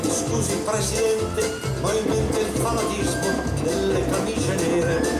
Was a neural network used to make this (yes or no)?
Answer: no